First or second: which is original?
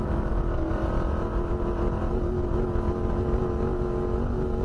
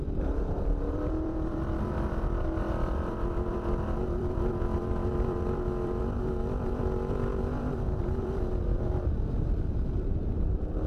first